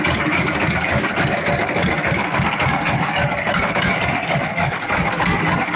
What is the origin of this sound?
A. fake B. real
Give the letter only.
A